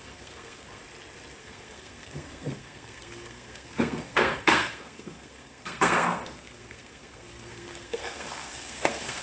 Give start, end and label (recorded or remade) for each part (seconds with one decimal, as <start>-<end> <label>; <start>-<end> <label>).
0.0-0.8 remade; 0.8-1.4 recorded; 1.4-9.2 remade

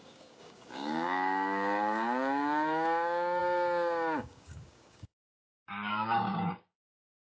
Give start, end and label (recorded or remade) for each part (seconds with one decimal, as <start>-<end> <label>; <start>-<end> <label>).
0.0-7.3 remade